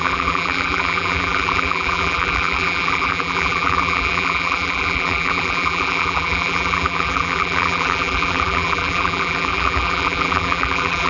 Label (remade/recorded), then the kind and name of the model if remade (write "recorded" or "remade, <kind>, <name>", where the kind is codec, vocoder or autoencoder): remade, vocoder, BigVGAN v2